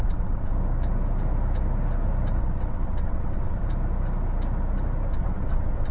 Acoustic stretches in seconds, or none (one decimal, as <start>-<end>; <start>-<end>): 0.5-2.4; 3.6-5.1